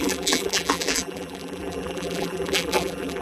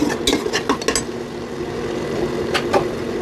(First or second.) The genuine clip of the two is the second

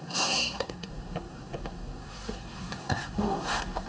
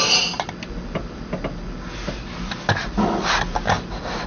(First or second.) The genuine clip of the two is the second